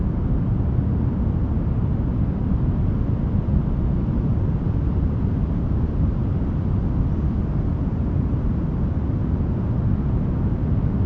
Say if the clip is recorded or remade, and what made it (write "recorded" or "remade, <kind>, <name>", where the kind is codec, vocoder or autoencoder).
recorded